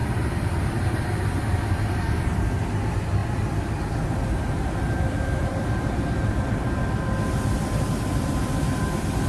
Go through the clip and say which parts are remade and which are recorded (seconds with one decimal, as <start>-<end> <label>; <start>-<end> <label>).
0.0-3.2 remade; 3.2-3.9 recorded; 3.9-6.8 remade; 6.8-8.6 recorded; 8.6-9.3 remade